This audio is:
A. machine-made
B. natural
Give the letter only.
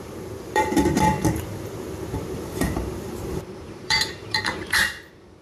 A